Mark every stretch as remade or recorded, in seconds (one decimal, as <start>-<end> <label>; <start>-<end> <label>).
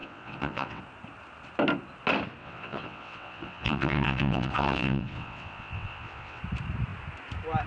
0.0-0.8 remade; 0.8-2.4 recorded; 2.4-6.4 remade; 6.4-7.7 recorded